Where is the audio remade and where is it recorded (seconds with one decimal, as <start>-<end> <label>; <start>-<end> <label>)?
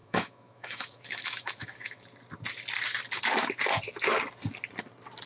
0.0-2.0 remade; 2.0-5.3 recorded